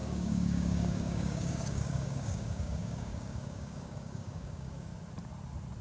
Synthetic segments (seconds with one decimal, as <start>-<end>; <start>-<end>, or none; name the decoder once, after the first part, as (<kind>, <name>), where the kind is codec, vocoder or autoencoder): 0.0-4.9 (codec, DAC)